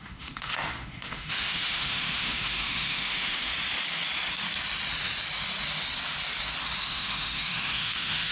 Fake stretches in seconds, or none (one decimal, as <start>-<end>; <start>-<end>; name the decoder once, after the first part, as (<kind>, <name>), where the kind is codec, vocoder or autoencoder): 0.0-3.5 (autoencoder, DAC-VAE); 6.9-8.3